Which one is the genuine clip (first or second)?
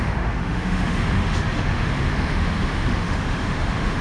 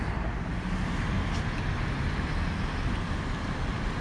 second